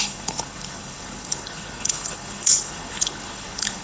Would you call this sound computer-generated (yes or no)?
yes